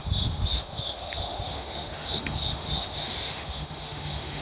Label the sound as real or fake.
fake